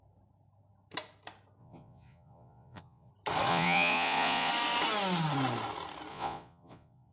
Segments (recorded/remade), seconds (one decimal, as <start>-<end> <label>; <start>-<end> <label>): 0.0-1.6 recorded; 1.6-3.1 remade; 3.1-3.5 recorded; 3.5-4.5 remade; 4.5-6.1 recorded; 6.1-7.1 remade